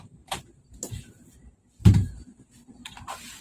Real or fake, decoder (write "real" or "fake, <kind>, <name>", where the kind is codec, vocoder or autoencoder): fake, vocoder, BigVGAN v2